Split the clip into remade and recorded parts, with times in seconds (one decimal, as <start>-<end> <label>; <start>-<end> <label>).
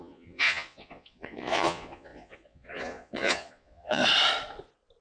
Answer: 0.0-4.0 remade; 4.0-5.0 recorded